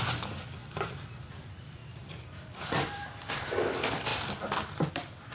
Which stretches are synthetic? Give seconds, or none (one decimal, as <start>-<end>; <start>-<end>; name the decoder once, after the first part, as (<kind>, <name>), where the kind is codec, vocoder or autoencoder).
1.8-3.5 (vocoder, BigVGAN v2)